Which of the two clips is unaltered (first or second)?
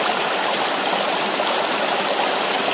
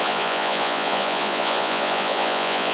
first